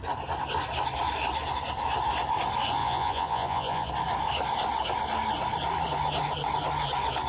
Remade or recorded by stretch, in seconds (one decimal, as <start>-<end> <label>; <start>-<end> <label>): 0.0-2.8 recorded; 2.8-3.9 remade; 3.9-7.3 recorded